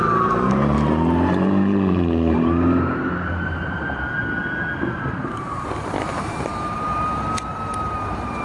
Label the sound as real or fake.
fake